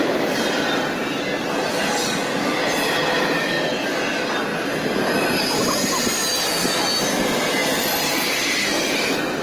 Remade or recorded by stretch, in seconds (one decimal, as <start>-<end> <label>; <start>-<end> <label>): 0.0-9.4 recorded